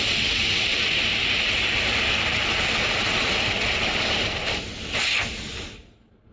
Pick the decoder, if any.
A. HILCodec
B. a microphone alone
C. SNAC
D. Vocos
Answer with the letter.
B